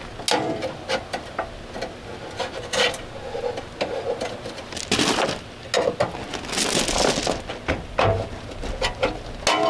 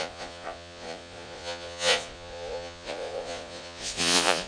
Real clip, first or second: first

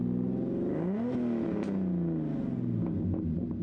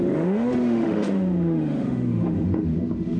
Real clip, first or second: first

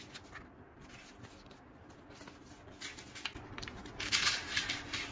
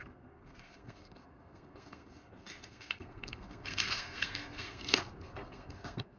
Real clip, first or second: first